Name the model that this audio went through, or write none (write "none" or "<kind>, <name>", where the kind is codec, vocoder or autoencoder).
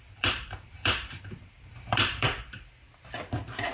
vocoder, BigVGAN v2